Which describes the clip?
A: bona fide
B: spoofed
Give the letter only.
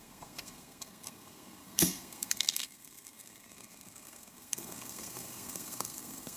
B